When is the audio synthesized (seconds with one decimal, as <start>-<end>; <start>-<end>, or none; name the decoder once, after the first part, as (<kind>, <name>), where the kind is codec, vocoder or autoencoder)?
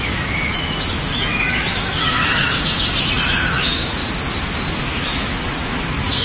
0.0-4.0 (autoencoder, DAC-VAE); 4.7-6.2